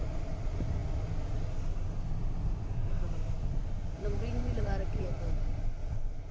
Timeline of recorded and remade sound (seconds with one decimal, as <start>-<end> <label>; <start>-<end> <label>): 0.0-6.3 recorded